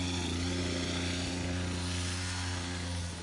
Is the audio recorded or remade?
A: recorded